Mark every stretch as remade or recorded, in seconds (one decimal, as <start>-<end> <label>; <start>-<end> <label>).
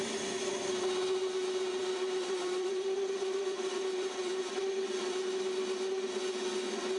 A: 0.0-1.8 recorded; 1.8-4.6 remade; 4.6-7.0 recorded